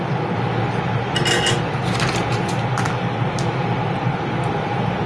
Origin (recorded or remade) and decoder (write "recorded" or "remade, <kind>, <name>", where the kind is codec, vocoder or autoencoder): recorded